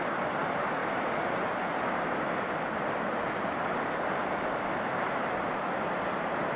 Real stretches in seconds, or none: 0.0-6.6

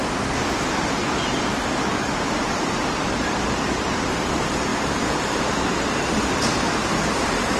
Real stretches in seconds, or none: 0.0-1.5; 2.1-7.6

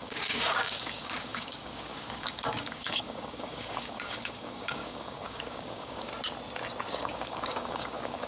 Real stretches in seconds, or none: 6.1-6.9

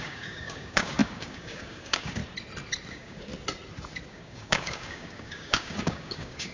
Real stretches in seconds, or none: 2.2-2.9; 3.3-4.1

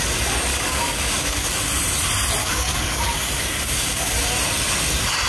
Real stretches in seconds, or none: 0.0-0.5; 1.6-2.4; 4.2-5.3

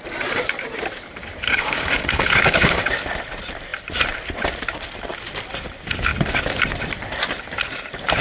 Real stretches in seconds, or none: 0.0-1.2; 2.8-8.2

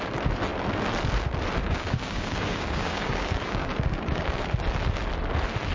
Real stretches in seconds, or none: 0.0-1.6; 4.4-5.7